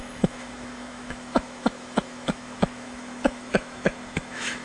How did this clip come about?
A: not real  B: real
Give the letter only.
A